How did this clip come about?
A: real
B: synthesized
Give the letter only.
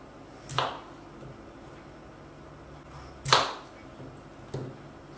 A